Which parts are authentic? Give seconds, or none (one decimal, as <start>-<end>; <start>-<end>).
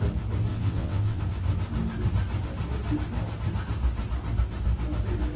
0.0-0.5; 1.2-5.4